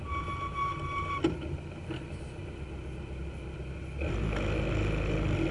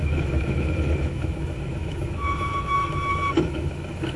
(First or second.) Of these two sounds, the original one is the first